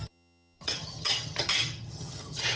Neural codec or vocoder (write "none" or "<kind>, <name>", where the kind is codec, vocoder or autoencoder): vocoder, HiFi-GAN